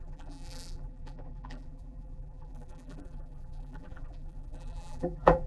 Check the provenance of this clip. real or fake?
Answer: fake